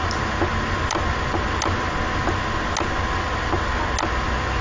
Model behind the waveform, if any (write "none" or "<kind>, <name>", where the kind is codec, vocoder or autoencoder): none